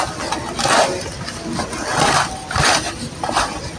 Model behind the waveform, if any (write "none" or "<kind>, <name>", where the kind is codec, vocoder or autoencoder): none